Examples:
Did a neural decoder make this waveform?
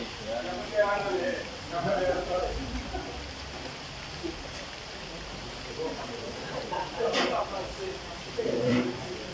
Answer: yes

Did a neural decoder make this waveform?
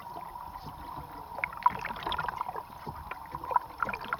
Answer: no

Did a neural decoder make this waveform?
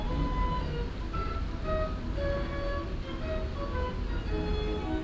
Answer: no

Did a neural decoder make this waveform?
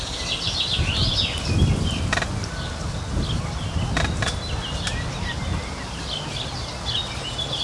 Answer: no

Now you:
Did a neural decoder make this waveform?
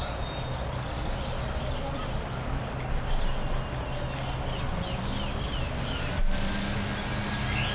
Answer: no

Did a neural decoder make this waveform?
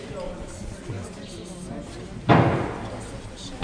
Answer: no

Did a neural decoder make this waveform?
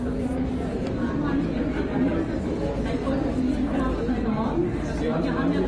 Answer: no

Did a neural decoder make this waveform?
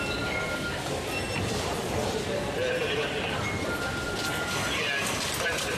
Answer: no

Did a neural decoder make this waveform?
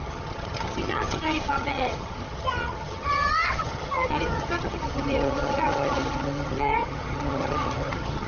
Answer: yes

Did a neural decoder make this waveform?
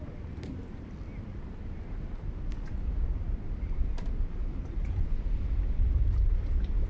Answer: no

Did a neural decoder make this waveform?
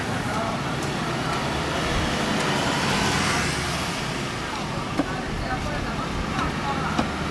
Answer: no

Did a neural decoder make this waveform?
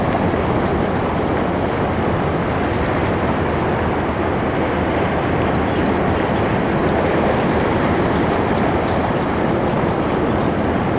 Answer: no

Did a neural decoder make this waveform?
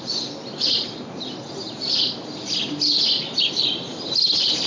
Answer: no